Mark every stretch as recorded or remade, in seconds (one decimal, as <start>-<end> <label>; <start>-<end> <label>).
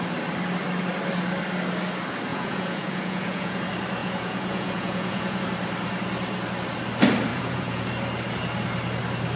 0.0-2.3 recorded; 2.3-3.6 remade; 3.6-4.0 recorded; 4.0-5.4 remade; 5.4-7.3 recorded; 7.3-7.9 remade; 7.9-9.4 recorded